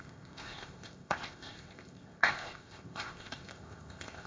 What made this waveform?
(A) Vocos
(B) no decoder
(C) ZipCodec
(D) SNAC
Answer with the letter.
C